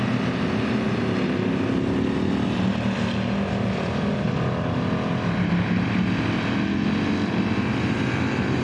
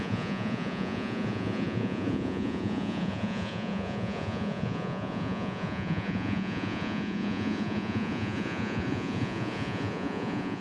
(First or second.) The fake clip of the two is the second